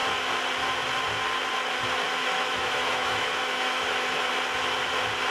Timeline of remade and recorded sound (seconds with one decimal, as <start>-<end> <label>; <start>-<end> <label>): 0.0-2.2 recorded; 2.2-4.3 remade; 4.3-5.3 recorded